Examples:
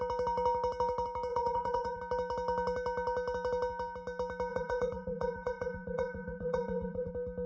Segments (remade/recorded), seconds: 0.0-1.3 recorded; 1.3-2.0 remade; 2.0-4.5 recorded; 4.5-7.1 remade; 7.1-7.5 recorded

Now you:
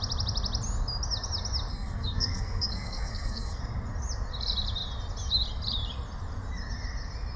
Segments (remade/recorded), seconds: 0.0-1.7 recorded; 1.7-3.6 remade; 3.6-7.4 recorded